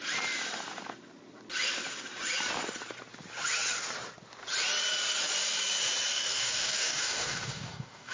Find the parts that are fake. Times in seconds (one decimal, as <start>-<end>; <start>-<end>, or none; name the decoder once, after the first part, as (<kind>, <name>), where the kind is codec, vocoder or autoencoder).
6.1-8.1 (codec, DAC)